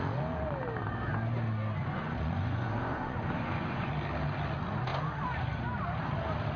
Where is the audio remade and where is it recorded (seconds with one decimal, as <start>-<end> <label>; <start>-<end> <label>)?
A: 0.0-1.8 recorded; 1.8-3.9 remade; 3.9-6.6 recorded